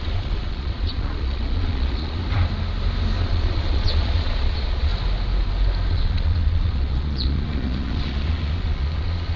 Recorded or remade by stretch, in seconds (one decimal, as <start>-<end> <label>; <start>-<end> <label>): 0.0-2.2 remade; 2.2-3.2 recorded; 3.2-4.9 remade; 4.9-5.9 recorded; 5.9-9.4 remade